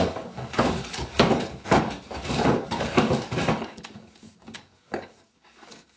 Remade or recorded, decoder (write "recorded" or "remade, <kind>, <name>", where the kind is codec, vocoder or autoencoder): remade, codec, DAC